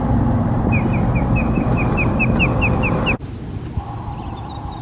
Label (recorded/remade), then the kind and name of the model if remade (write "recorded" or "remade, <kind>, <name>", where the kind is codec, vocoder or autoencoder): recorded